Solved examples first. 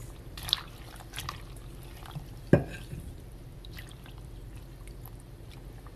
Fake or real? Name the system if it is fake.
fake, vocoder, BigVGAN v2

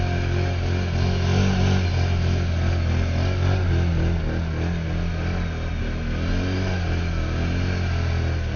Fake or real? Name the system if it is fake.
real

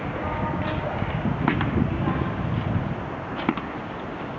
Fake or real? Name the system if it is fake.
real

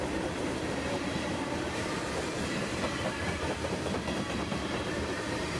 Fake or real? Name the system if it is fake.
fake, vocoder, BigVGAN v2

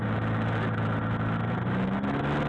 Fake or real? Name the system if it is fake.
real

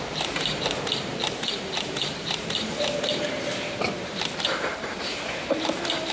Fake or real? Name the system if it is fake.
fake, vocoder, BigVGAN v2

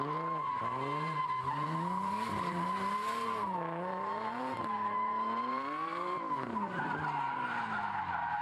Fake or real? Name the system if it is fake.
fake, vocoder, BigVGAN v2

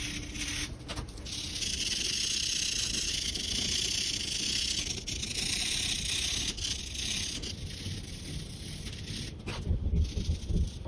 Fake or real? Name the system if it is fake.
real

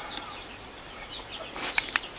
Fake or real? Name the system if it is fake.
fake, vocoder, BigVGAN v2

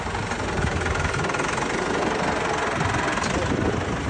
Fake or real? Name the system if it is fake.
real